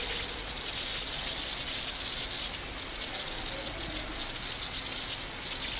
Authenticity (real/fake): real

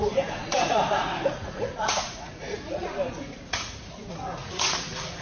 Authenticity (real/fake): fake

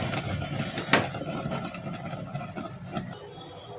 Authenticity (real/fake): real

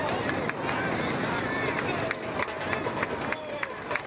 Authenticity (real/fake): real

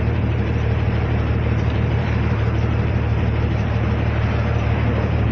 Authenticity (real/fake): fake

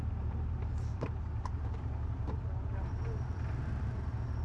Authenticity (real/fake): fake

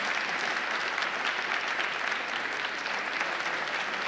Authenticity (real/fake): real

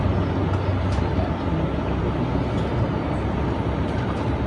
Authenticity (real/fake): real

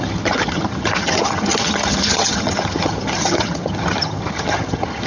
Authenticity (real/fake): fake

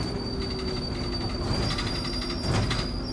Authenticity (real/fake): real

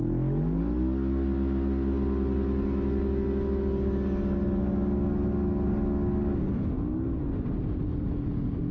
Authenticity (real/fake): real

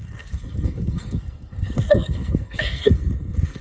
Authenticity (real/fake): fake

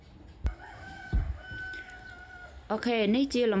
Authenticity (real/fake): real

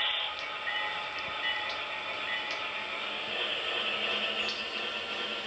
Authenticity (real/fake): real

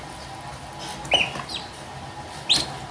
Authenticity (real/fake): real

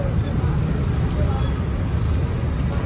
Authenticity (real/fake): real